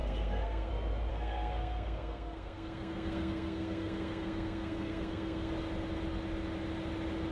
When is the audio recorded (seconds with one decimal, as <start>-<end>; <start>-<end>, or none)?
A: 0.7-1.1; 5.5-7.3